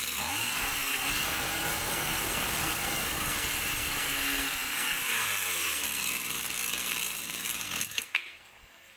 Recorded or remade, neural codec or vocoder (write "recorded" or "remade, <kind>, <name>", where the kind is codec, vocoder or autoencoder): remade, codec, SNAC